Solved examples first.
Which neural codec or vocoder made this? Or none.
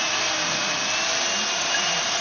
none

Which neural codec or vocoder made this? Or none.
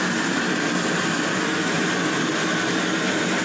none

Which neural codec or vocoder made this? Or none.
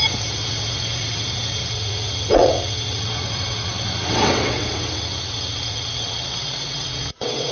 vocoder, WaveNeXt